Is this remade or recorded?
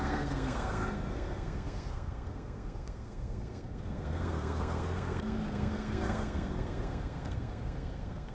remade